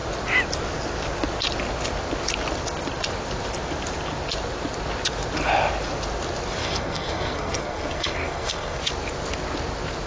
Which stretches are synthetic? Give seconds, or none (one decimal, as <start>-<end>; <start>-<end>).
6.6-8.8